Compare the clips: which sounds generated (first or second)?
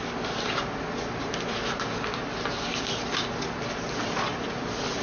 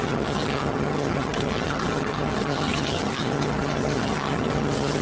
second